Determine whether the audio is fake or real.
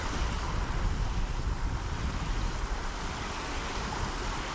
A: real